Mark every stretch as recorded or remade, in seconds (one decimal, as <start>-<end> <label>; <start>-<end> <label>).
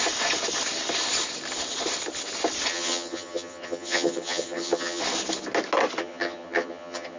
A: 0.0-2.7 recorded; 2.7-5.0 remade; 5.0-6.0 recorded; 6.0-7.2 remade